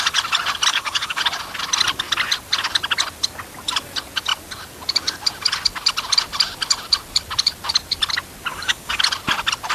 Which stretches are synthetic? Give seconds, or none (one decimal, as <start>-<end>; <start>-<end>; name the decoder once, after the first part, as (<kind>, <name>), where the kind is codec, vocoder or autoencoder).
0.7-1.2 (codec, DAC); 8.5-9.0

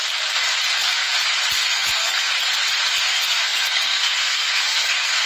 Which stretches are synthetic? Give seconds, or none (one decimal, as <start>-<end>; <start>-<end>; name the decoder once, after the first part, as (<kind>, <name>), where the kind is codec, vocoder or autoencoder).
0.7-1.1 (codec, SNAC); 1.7-2.3; 3.0-5.3

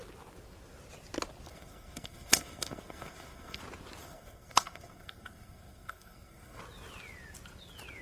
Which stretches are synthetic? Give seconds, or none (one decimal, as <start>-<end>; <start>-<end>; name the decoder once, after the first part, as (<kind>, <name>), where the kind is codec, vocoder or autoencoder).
1.5-3.6 (codec, SNAC); 4.0-6.6

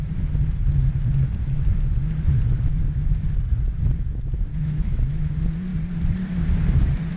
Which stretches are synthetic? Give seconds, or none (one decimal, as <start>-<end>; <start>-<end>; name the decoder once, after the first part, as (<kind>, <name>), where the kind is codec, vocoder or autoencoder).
4.5-5.3 (autoencoder, DAC-VAE)